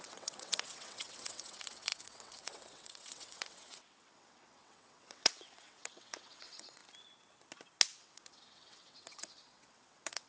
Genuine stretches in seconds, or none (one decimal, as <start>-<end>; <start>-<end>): 6.8-8.0